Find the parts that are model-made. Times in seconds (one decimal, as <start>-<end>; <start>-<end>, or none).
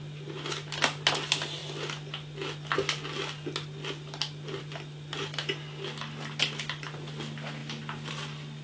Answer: none